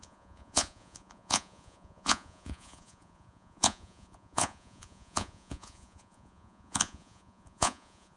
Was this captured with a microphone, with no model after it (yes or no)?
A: no